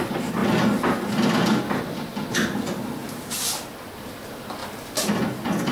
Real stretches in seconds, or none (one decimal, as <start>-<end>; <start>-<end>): 0.0-5.7